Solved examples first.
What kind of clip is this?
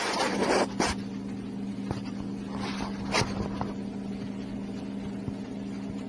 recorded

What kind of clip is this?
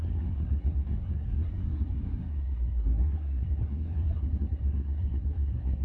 remade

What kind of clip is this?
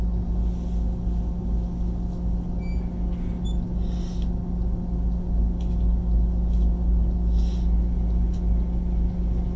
recorded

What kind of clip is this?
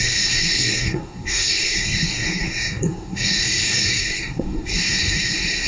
remade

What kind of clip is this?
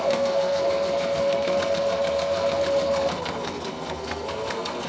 remade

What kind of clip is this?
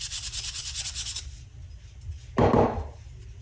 recorded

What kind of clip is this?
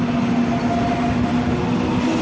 recorded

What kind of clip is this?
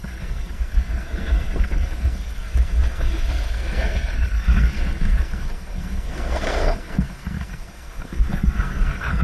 remade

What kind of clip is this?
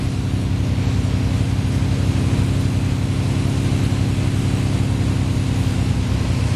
recorded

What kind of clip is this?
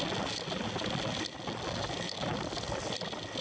recorded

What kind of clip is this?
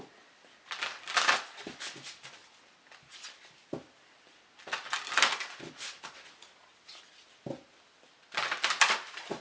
recorded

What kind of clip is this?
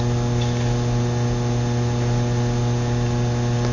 recorded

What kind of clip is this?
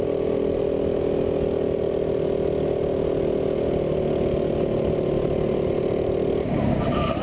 recorded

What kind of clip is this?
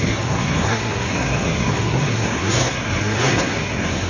remade